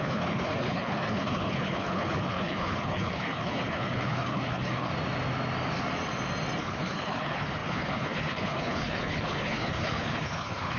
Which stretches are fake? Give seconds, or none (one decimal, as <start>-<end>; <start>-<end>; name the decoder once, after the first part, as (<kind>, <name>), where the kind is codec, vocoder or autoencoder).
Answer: 0.0-4.9 (codec, HILCodec); 6.6-10.8